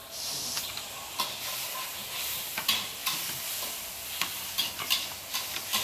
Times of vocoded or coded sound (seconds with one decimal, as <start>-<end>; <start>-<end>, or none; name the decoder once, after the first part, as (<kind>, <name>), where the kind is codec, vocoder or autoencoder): 0.0-0.7 (vocoder, BigVGAN v2); 3.0-3.9